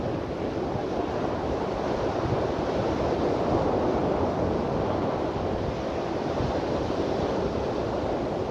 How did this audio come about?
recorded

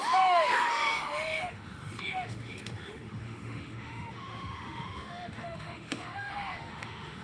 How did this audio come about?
remade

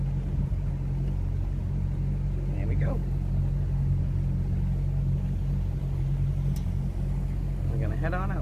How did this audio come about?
recorded